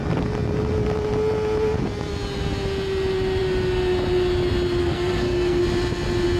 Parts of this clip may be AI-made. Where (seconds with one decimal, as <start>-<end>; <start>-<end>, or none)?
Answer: 4.8-5.6